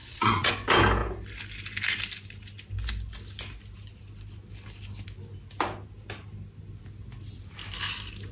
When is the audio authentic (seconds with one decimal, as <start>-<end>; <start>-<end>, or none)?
0.5-8.3

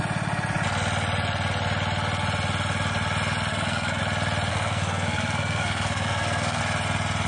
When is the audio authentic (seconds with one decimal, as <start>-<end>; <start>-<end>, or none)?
0.0-3.5; 4.0-4.5; 6.6-7.3